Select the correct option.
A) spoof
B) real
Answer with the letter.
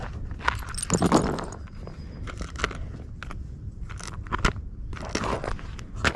B